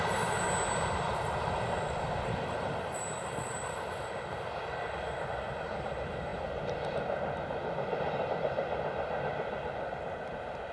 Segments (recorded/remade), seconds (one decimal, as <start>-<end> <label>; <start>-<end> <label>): 0.0-10.7 recorded